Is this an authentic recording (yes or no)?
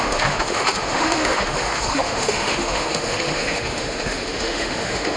no